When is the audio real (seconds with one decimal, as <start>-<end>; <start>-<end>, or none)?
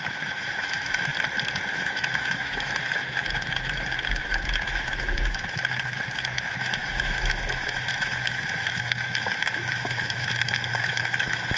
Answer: 1.1-1.7